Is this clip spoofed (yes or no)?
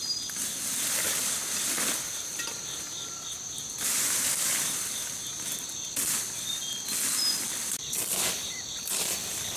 no